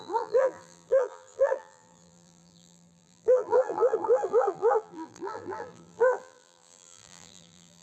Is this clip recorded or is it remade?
remade